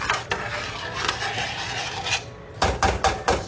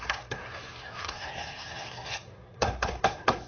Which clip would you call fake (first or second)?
second